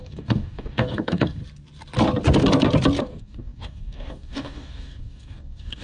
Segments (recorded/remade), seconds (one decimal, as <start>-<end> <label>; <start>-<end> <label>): 0.0-1.4 remade; 1.4-3.0 recorded; 3.0-5.8 remade